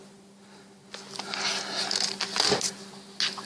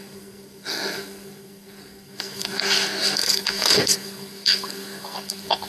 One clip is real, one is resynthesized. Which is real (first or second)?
first